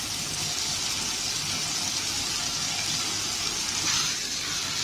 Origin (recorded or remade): recorded